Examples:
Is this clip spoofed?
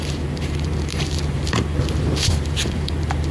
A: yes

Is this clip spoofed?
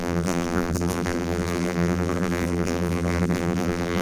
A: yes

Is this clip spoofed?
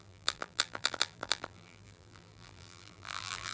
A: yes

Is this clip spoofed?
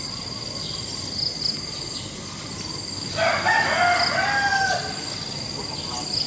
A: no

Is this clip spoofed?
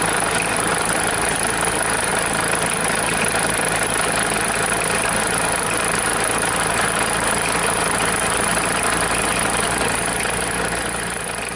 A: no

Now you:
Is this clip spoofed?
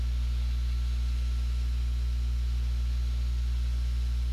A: no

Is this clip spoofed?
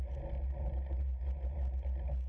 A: no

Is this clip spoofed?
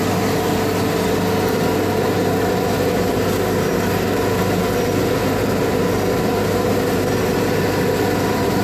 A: no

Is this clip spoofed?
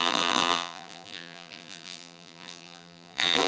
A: yes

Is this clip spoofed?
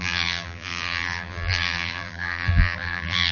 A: yes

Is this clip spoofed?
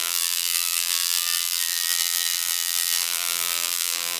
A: yes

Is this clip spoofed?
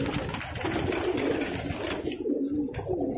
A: no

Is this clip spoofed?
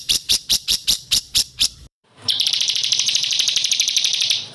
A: yes